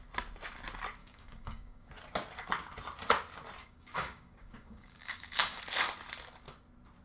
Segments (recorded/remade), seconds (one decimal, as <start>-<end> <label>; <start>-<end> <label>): 0.0-1.0 recorded; 1.0-1.9 remade; 1.9-3.6 recorded; 3.6-5.6 remade; 5.6-7.0 recorded